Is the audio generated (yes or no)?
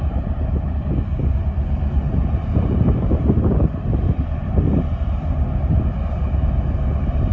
no